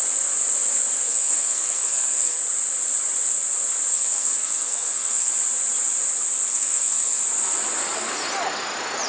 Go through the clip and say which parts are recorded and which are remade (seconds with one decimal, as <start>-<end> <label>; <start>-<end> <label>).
0.0-1.1 recorded; 1.1-2.4 remade; 2.4-3.9 recorded; 3.9-5.3 remade; 5.3-6.5 recorded; 6.5-7.2 remade; 7.2-9.1 recorded